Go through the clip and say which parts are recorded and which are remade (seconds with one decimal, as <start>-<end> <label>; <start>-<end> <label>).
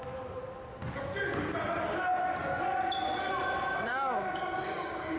0.0-3.9 recorded; 3.9-5.2 remade